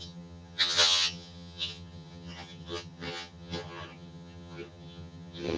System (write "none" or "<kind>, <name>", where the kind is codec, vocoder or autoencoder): vocoder, HiFi-GAN